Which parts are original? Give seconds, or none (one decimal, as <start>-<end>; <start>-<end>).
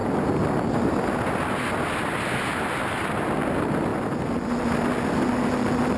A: 0.0-6.0